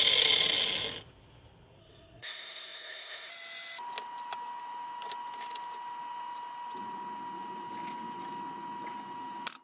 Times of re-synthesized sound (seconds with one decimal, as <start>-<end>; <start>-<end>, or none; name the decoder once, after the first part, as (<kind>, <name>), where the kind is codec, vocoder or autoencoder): 1.8-3.3 (codec, SNAC)